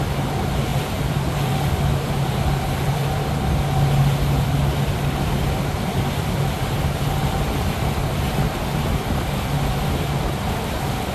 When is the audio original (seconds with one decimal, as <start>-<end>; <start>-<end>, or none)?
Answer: 0.0-0.7; 3.3-11.1